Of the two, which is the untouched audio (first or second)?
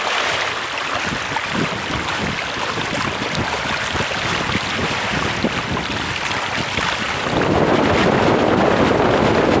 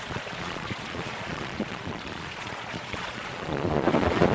first